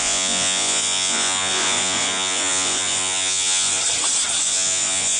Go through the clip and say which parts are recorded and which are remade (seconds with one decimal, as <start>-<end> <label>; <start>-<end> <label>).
0.0-3.8 remade; 3.8-4.4 recorded; 4.4-5.2 remade